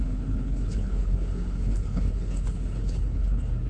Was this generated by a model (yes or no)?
yes